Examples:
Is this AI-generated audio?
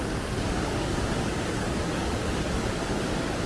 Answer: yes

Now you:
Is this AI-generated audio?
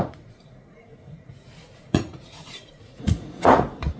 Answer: yes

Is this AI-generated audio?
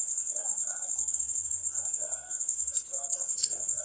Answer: yes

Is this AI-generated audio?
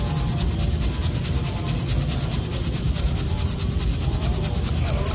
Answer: no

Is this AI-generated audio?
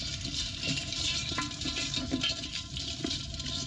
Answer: no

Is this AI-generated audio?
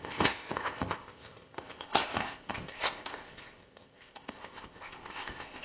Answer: yes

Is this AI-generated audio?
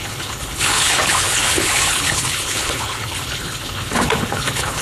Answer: yes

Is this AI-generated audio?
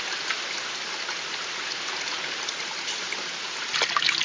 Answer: no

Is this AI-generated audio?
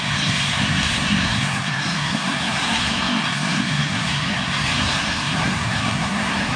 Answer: yes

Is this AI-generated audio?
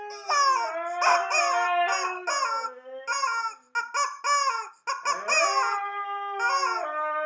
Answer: no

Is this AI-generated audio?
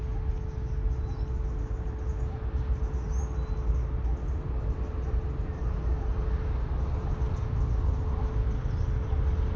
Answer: no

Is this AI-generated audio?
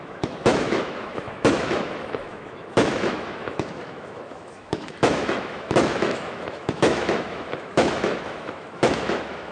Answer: yes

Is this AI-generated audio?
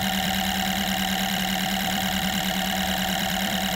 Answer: yes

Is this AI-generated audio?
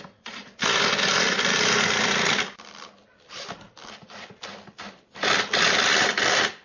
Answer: no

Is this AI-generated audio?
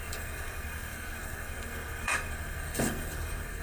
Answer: yes